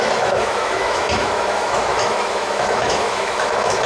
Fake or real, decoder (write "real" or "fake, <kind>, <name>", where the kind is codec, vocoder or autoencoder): fake, autoencoder, DAC-VAE